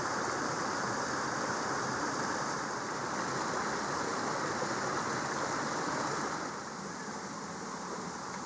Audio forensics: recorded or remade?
recorded